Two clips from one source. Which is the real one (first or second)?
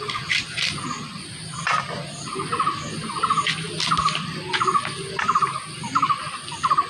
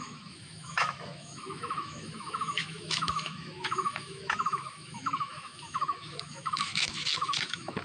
first